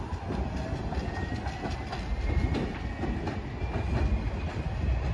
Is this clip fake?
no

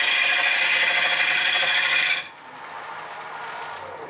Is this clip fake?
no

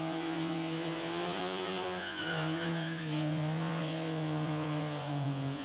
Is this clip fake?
yes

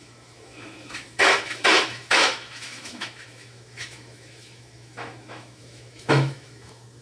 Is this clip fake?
yes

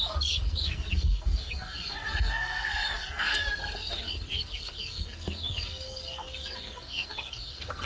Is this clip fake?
yes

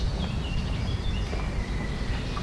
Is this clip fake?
no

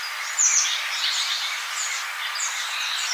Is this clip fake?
no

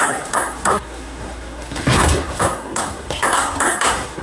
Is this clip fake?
yes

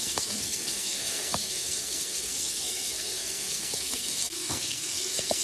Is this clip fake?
yes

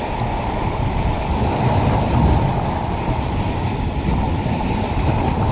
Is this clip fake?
no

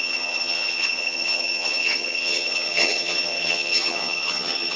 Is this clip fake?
yes